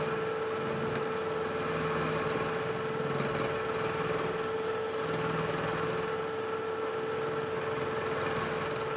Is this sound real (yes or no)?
yes